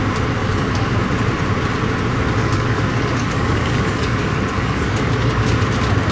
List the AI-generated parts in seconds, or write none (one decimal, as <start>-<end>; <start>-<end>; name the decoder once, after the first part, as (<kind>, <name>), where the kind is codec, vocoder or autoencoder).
0.4-0.9 (codec, DAC); 2.4-5.5